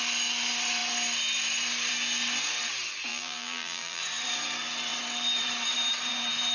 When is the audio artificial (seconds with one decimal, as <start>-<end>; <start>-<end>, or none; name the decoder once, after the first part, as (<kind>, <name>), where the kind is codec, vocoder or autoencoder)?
3.1-4.0 (vocoder, BigVGAN v2)